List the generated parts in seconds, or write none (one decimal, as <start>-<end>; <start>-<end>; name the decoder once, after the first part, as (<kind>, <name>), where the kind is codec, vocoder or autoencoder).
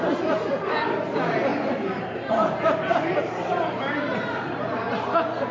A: 1.5-4.8 (vocoder, BigVGAN v2)